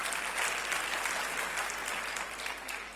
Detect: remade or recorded recorded